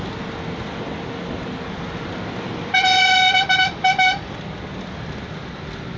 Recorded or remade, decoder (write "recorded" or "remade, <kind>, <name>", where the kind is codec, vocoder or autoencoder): recorded